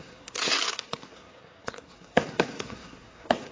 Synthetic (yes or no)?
yes